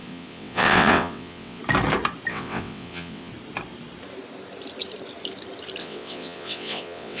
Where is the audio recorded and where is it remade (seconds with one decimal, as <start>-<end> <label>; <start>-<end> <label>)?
0.0-1.6 remade; 1.6-2.3 recorded; 2.3-3.3 remade; 3.3-5.8 recorded; 5.8-7.2 remade